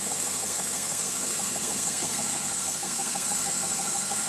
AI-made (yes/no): yes